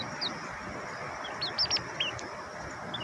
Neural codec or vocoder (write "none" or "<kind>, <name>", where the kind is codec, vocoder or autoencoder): none